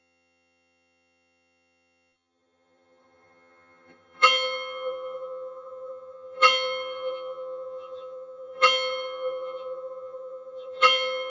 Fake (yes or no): yes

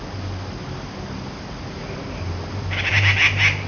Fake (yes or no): no